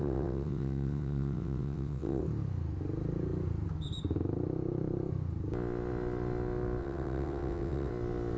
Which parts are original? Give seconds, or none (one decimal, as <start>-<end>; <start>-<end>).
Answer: 2.2-6.8; 7.9-8.4